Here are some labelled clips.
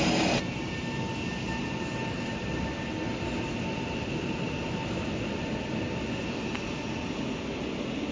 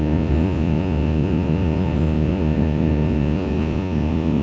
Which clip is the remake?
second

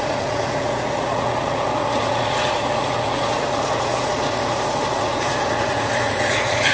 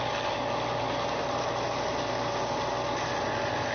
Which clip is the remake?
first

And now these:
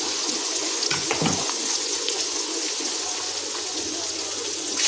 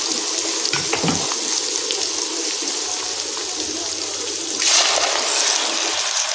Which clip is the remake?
first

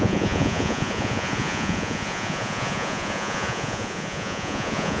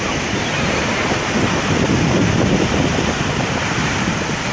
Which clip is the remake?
first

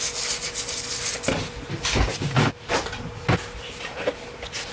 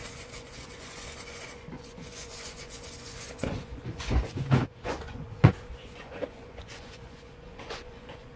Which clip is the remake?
second